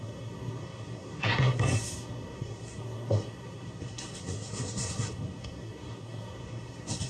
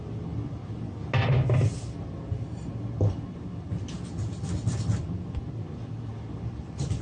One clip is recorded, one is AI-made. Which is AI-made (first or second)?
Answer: first